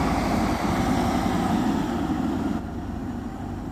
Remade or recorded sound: recorded